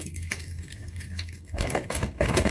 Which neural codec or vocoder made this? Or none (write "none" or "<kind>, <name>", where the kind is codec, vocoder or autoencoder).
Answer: codec, DAC